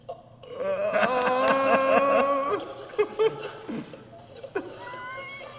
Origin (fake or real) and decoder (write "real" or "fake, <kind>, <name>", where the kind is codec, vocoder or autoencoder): real